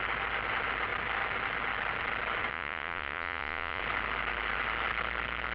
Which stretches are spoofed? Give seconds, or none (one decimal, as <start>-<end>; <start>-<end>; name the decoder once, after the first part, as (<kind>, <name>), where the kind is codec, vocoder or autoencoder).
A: 2.5-3.8 (vocoder, Vocos)